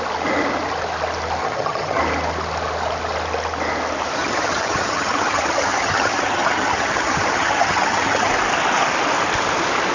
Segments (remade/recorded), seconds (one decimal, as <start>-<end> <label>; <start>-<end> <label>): 0.0-1.4 recorded; 1.4-2.0 remade; 2.0-4.2 recorded; 4.2-8.3 remade; 8.3-9.9 recorded